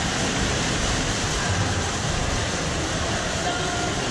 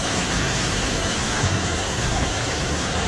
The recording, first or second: first